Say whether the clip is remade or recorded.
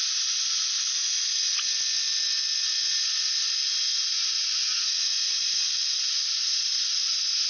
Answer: recorded